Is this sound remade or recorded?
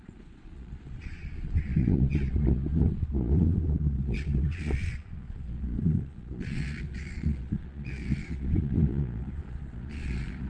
remade